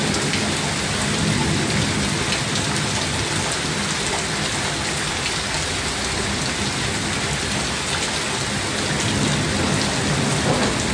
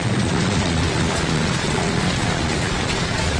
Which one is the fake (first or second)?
second